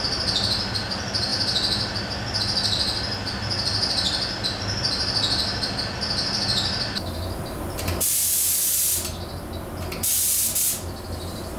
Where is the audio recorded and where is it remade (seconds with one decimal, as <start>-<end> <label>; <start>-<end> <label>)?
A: 0.0-11.6 recorded